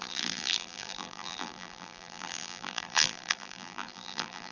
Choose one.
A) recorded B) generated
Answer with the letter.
B